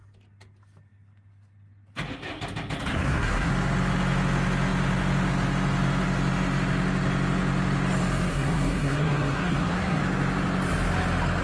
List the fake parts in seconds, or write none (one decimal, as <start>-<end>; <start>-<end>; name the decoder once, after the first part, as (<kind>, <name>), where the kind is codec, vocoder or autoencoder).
2.9-3.5 (codec, SNAC); 8.3-10.0